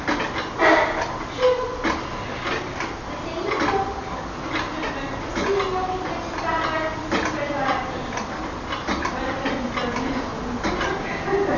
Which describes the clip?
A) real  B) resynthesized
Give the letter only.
A